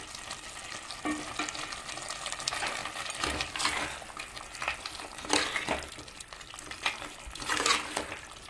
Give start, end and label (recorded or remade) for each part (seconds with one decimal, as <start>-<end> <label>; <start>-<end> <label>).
0.0-8.5 recorded